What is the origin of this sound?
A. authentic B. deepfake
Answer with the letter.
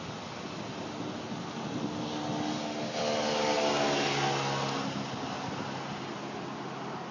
A